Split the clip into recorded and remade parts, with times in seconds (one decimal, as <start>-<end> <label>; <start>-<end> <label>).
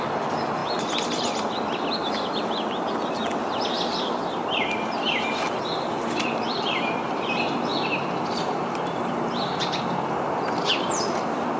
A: 0.0-0.6 remade; 0.6-2.1 recorded; 2.1-7.7 remade; 7.7-8.3 recorded; 8.3-11.6 remade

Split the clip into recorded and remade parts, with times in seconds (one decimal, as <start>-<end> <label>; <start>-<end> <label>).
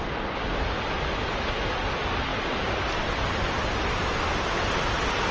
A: 0.0-5.3 recorded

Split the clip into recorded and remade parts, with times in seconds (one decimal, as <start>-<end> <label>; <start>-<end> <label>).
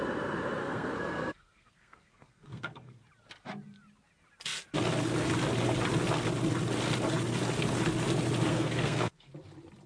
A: 0.0-0.6 recorded; 0.6-3.0 remade; 3.0-8.5 recorded; 8.5-9.3 remade; 9.3-9.9 recorded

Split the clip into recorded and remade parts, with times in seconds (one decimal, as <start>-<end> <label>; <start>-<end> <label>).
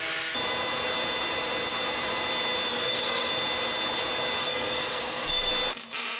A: 0.0-2.7 recorded; 2.7-3.3 remade; 3.3-4.4 recorded; 4.4-5.5 remade; 5.5-6.2 recorded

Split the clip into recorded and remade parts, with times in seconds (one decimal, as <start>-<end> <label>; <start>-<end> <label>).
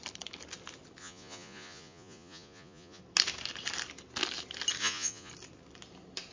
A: 0.0-1.0 recorded; 1.0-3.0 remade; 3.0-4.8 recorded; 4.8-5.3 remade; 5.3-6.3 recorded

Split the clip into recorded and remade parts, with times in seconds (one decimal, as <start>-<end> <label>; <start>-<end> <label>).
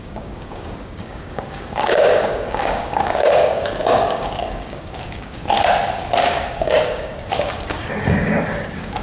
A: 0.0-5.4 remade; 5.4-6.2 recorded; 6.2-9.0 remade